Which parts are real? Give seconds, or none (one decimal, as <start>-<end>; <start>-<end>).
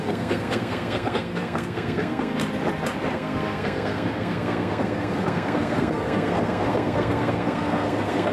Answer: 2.4-3.1